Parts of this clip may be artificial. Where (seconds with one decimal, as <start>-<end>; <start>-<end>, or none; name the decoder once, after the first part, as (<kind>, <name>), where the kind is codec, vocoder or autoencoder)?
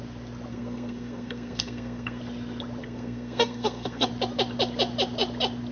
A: 0.5-2.2 (codec, SNAC); 2.8-4.1